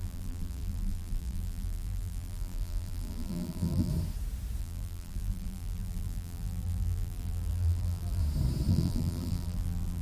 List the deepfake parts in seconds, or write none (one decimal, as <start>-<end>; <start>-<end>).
0.0-3.9; 4.6-8.2; 8.7-10.0